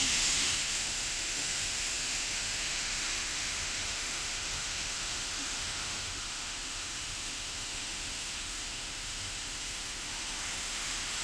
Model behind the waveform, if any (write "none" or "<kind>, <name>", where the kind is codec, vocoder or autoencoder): autoencoder, DAC-VAE